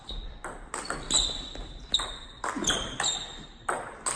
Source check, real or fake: real